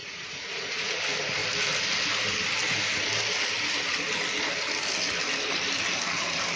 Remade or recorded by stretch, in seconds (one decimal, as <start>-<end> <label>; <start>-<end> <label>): 0.0-0.9 remade; 0.9-6.6 recorded